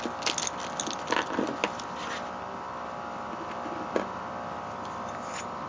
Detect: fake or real real